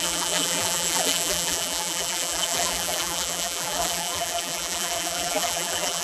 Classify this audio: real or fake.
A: fake